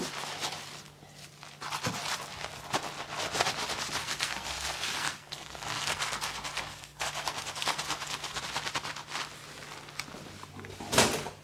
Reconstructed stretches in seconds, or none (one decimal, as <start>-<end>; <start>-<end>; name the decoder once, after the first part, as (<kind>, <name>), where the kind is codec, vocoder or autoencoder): 4.0-8.4 (codec, SNAC)